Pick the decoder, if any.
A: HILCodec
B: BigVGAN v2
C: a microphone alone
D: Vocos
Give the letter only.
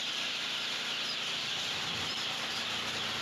B